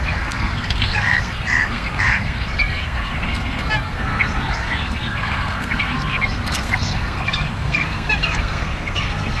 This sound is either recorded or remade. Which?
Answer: remade